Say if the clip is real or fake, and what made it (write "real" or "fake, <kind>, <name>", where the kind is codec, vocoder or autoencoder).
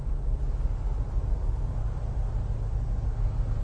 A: real